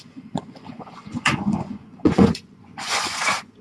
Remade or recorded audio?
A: remade